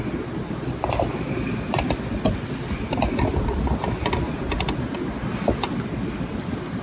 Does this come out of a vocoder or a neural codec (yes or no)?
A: no